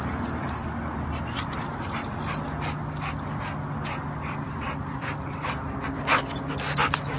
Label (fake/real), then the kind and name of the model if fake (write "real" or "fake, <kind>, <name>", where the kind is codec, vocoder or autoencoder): real